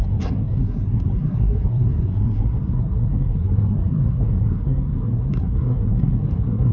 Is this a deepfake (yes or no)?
yes